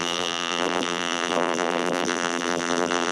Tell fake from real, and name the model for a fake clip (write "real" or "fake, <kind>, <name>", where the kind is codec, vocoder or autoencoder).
fake, vocoder, BigVGAN v2